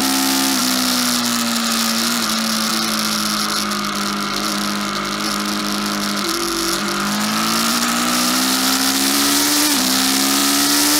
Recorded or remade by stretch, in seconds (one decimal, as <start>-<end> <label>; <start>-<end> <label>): 0.0-7.7 recorded; 7.7-9.6 remade; 9.6-11.0 recorded